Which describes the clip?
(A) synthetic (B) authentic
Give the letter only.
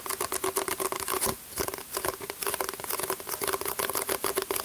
B